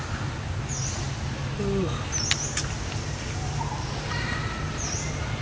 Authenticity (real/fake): real